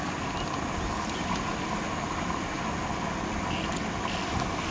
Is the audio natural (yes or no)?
yes